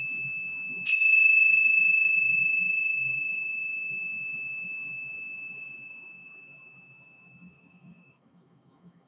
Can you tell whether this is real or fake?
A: fake